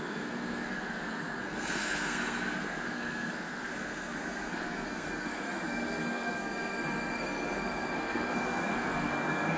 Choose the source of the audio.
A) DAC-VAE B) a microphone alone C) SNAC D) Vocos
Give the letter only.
C